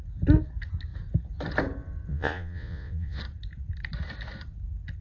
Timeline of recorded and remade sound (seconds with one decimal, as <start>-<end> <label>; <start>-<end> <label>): 0.0-2.1 recorded; 2.1-3.2 remade; 3.2-5.0 recorded